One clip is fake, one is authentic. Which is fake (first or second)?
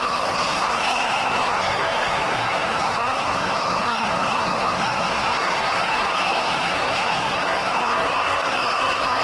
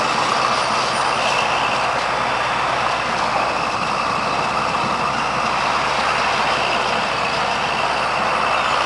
first